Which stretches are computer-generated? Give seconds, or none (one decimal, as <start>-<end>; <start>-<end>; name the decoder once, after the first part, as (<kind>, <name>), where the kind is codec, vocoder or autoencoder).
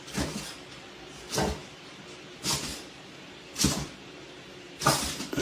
1.6-4.8 (vocoder, BigVGAN v2)